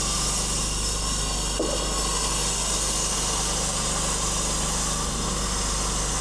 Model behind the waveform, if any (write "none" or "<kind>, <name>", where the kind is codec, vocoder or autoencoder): none